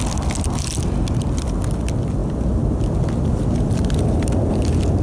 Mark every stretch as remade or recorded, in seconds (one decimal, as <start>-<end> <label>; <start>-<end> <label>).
0.0-5.0 recorded